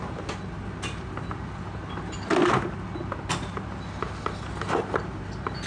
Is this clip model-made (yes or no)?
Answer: no